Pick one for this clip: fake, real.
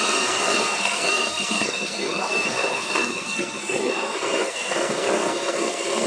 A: fake